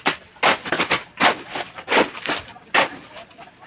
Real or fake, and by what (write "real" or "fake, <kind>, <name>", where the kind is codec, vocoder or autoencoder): real